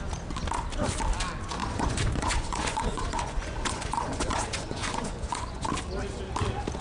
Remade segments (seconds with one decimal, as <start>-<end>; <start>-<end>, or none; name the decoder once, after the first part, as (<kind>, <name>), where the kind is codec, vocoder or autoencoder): 1.6-5.7 (vocoder, Vocos)